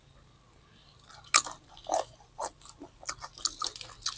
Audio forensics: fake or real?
real